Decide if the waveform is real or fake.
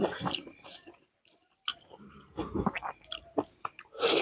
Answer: fake